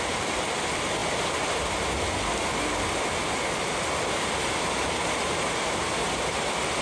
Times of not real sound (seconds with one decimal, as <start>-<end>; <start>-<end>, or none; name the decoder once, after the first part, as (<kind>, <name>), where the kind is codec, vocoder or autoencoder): none